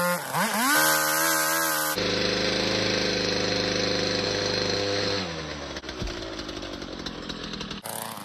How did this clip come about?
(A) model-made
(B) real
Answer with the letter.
B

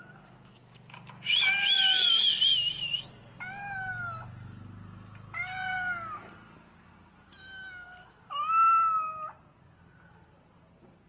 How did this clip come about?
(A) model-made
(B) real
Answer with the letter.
B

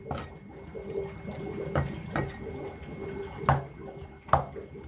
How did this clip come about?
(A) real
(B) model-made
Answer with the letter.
A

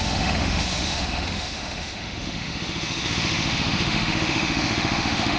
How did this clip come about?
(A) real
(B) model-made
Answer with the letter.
B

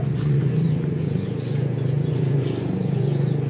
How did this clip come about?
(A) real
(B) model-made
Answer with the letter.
B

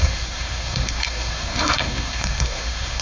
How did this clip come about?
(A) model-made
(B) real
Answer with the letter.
A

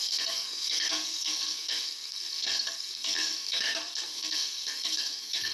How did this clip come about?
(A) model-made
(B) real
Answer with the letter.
A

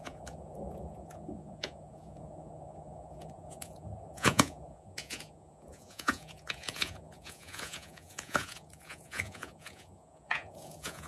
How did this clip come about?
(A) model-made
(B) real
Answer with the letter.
A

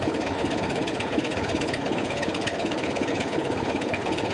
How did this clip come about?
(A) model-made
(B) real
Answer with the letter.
A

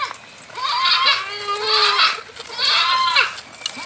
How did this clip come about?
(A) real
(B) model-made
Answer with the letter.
A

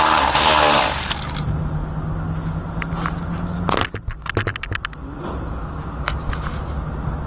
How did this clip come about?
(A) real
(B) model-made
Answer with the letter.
A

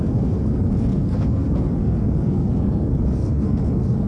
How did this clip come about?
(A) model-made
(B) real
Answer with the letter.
A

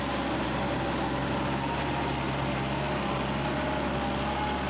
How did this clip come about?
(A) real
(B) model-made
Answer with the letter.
A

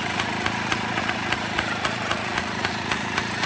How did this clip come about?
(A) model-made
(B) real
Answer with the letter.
A